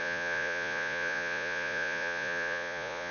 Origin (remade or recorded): remade